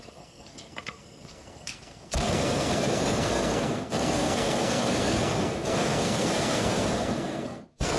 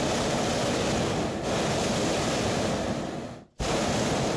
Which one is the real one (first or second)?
second